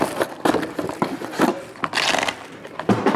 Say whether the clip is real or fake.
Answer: fake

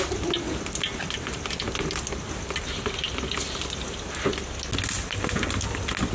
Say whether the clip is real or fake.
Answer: real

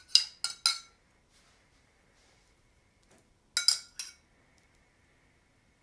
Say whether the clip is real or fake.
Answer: real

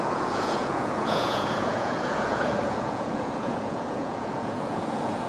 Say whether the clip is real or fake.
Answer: fake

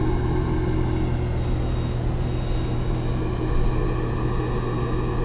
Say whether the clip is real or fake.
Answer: real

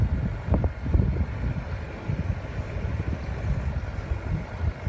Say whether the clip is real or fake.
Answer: real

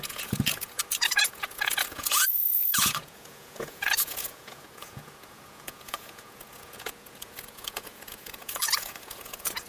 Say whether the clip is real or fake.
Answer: fake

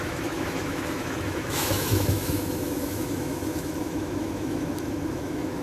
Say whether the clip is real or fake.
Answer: fake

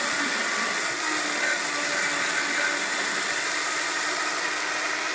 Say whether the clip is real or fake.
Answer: real